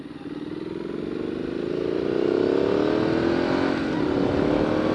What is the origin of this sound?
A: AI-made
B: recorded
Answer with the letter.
B